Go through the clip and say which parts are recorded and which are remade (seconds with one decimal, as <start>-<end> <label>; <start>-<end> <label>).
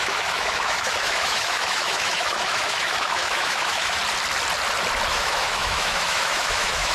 0.0-4.0 remade; 4.0-5.1 recorded; 5.1-6.9 remade